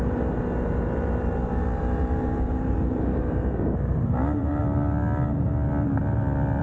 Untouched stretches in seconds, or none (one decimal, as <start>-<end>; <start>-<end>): 4.6-6.6